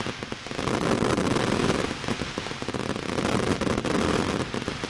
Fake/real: real